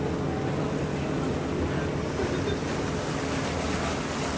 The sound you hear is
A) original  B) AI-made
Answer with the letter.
A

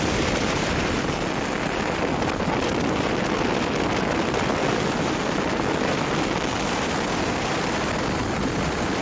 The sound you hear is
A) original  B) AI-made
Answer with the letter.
A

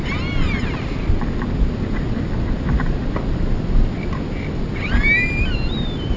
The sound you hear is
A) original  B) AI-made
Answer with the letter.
A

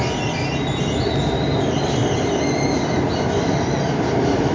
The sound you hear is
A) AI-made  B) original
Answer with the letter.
B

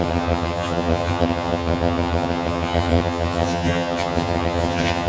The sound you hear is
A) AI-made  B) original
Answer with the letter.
A